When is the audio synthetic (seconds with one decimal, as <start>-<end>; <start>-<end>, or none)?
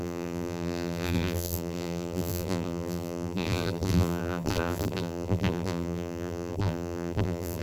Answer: 0.0-7.6